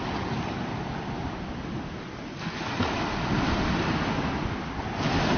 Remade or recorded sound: recorded